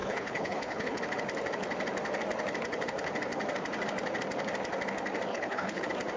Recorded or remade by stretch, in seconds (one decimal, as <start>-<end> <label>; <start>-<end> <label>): 0.0-1.0 remade; 1.0-5.3 recorded; 5.3-5.8 remade; 5.8-6.2 recorded